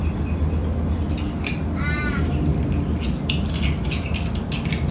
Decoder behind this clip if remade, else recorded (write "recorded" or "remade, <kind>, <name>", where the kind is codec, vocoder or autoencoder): recorded